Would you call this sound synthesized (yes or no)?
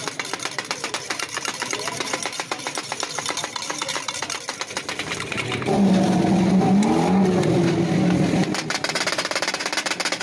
no